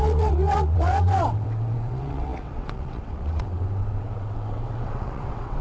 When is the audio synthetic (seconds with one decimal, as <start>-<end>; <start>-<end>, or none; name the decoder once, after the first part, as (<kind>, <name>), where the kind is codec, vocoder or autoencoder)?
0.0-5.6 (vocoder, WaveNeXt)